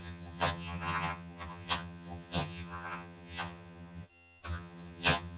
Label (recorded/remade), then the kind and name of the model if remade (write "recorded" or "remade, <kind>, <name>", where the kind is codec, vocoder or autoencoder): remade, vocoder, HiFi-GAN